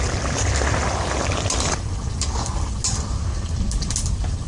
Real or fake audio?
real